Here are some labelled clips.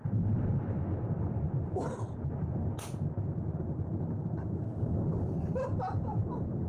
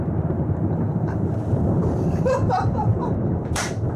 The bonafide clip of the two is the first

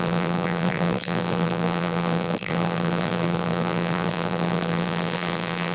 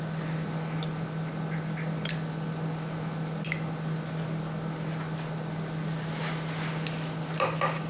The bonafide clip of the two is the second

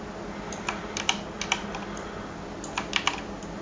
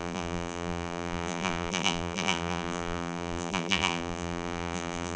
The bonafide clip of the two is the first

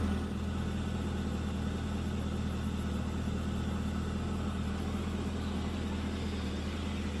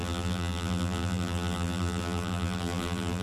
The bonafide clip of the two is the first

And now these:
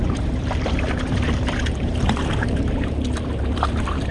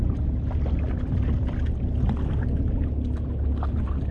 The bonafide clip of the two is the second